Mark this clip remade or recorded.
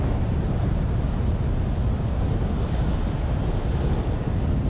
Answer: recorded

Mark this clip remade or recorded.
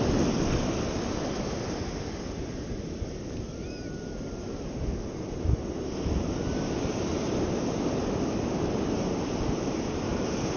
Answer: recorded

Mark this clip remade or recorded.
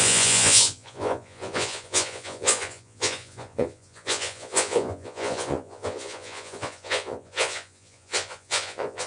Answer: remade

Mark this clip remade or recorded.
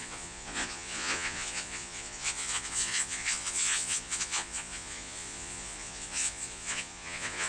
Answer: remade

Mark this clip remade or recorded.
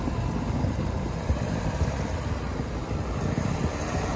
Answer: recorded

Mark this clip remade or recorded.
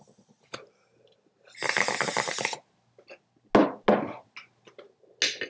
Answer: recorded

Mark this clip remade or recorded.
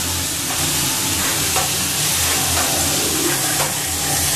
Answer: recorded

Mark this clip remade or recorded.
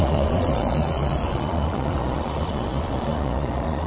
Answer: remade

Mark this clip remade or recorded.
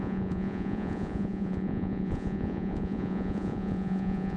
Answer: remade